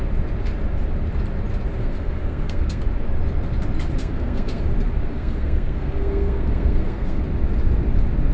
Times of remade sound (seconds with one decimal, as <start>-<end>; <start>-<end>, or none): 1.8-2.8; 4.0-4.6; 5.0-7.2